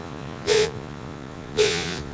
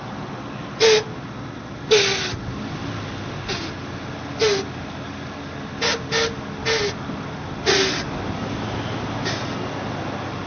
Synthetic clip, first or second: first